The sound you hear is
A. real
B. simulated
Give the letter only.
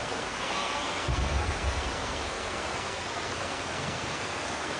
B